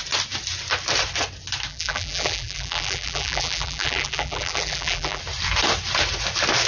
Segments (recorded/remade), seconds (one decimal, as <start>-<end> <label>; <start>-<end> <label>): 0.0-1.7 recorded; 1.7-5.2 remade; 5.2-6.7 recorded